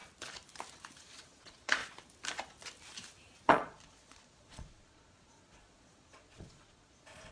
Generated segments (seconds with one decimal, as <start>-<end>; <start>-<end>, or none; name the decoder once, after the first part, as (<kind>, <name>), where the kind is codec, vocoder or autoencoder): 1.0-1.8 (vocoder, Vocos); 3.5-7.3